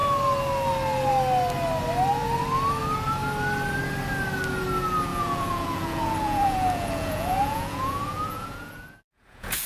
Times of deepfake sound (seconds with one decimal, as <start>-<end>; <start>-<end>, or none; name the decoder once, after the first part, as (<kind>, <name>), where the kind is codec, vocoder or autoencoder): 5.1-9.7 (vocoder, Vocos)